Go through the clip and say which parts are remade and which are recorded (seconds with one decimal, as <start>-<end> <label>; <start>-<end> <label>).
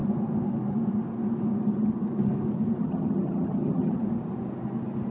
0.0-2.8 recorded; 2.8-4.0 remade; 4.0-5.1 recorded